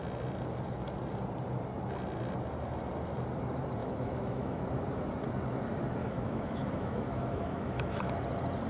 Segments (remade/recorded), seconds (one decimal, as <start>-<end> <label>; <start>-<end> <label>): 0.0-3.8 recorded; 3.8-4.6 remade; 4.6-6.0 recorded; 6.0-8.1 remade; 8.1-8.7 recorded